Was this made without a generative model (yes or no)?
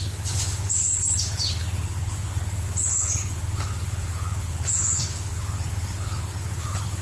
no